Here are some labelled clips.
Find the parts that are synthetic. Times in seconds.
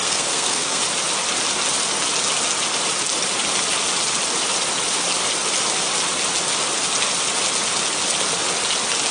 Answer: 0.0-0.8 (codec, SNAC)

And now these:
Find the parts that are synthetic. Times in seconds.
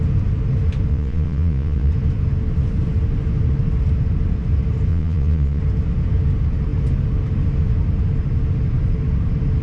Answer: 0.9-1.9 (vocoder, Vocos); 4.9-5.6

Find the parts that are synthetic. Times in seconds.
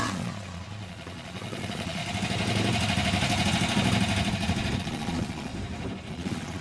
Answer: 0.0-2.0 (vocoder, Vocos); 4.8-5.5; 6.1-6.6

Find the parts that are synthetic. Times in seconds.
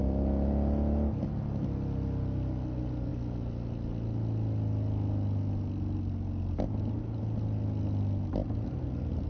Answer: none